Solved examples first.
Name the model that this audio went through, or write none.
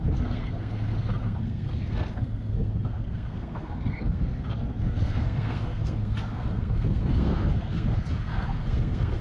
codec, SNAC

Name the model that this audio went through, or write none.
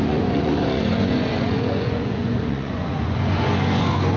vocoder, Vocos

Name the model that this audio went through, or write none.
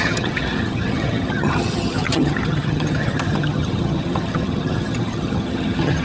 vocoder, HiFi-GAN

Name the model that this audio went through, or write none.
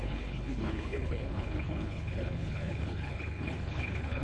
codec, HILCodec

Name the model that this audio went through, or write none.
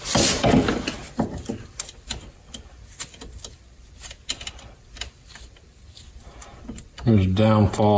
none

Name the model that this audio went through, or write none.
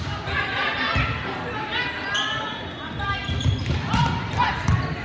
none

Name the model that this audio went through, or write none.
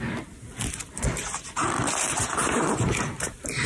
vocoder, BigVGAN v2